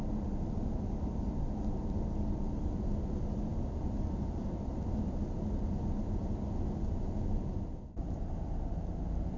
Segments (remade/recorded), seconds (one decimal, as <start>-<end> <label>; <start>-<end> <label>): 0.0-9.4 recorded